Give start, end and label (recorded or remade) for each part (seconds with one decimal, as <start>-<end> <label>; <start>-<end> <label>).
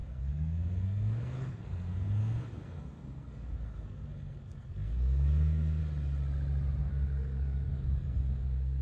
0.0-5.8 remade; 5.8-6.8 recorded; 6.8-8.8 remade